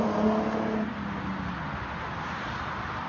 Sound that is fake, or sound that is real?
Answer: real